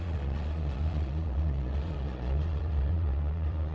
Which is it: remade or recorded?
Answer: remade